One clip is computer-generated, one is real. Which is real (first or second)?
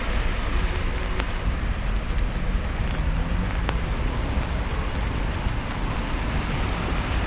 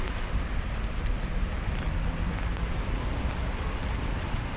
first